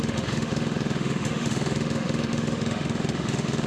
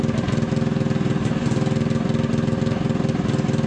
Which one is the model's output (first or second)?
first